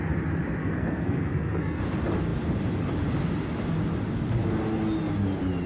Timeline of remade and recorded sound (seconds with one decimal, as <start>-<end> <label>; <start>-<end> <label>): 0.0-0.6 recorded; 0.6-1.8 remade; 1.8-5.7 recorded